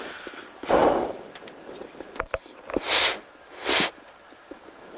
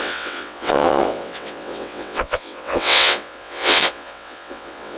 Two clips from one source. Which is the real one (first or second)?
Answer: first